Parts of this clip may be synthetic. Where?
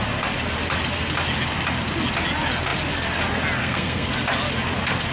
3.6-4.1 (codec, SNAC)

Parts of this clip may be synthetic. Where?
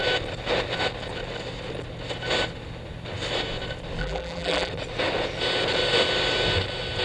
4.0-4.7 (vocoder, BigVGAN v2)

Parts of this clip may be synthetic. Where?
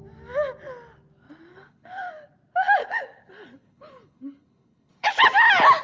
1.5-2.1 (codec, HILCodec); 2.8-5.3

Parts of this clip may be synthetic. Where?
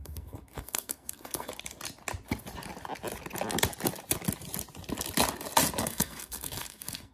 0.0-1.5 (codec, SNAC); 5.8-7.1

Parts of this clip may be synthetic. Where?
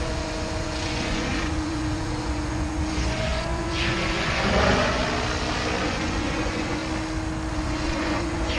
0.0-5.0 (vocoder, Vocos); 5.8-6.8; 7.5-8.6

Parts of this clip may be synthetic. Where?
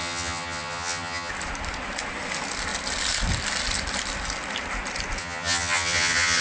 0.0-1.3 (vocoder, HiFi-GAN); 5.2-6.4